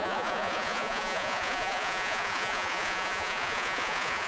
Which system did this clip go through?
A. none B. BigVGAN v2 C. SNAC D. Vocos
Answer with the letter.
D